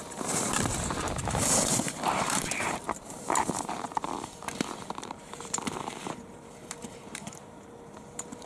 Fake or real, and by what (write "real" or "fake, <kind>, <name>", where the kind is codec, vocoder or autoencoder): fake, vocoder, BigVGAN v2